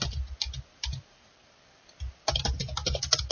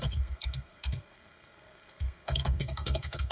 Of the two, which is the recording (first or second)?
first